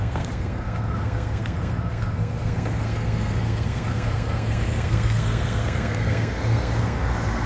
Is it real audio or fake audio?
fake